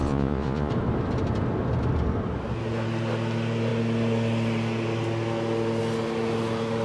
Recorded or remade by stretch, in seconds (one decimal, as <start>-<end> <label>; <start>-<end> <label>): 0.0-0.7 remade; 0.7-6.8 recorded